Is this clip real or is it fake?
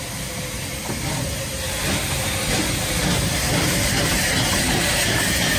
real